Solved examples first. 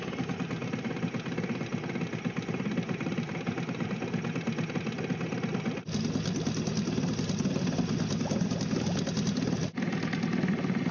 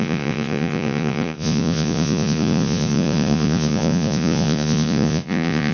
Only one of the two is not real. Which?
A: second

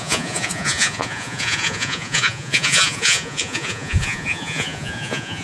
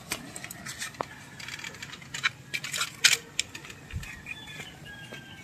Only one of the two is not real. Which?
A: first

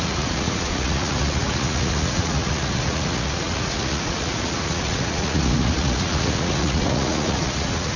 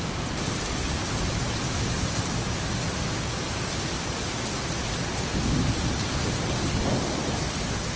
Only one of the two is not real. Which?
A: first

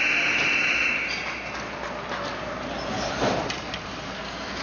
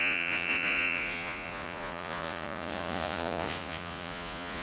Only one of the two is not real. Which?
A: second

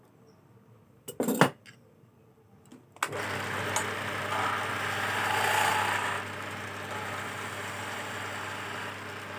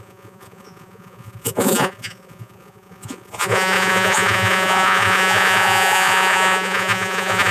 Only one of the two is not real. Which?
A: second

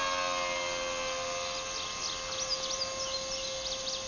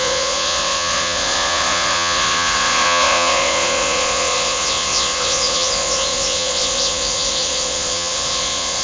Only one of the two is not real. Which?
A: second